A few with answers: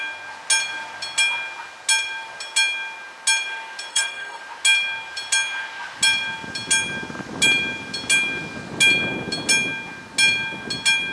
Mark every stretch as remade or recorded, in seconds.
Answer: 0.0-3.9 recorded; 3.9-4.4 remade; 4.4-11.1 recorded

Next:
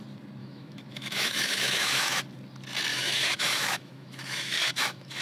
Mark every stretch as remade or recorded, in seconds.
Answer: 0.0-0.4 recorded; 0.4-2.2 remade; 2.2-2.9 recorded; 2.9-5.2 remade

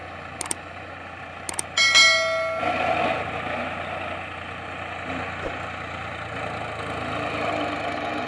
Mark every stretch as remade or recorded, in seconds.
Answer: 0.0-8.3 recorded

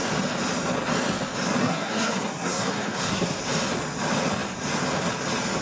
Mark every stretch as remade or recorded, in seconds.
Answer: 0.0-1.6 recorded; 1.6-3.4 remade; 3.4-5.6 recorded

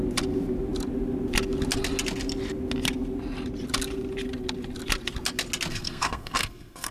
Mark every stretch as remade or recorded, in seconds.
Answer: 0.0-5.7 recorded; 5.7-6.9 remade

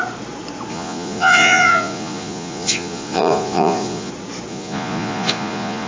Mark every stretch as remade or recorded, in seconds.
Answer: 0.0-0.7 recorded; 0.7-4.1 remade; 4.1-4.5 recorded; 4.5-5.9 remade

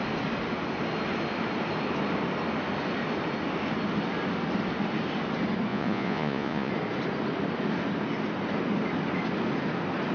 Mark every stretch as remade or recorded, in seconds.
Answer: 0.0-5.7 recorded; 5.7-6.7 remade; 6.7-10.1 recorded